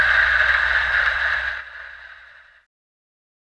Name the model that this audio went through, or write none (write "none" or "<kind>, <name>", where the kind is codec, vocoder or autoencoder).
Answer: none